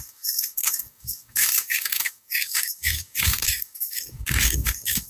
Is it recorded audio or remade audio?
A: remade